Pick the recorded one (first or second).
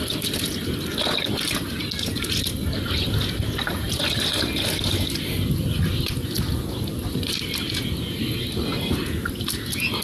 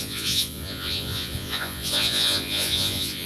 first